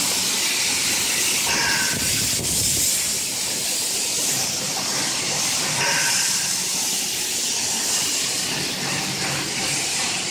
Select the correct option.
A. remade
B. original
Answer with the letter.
B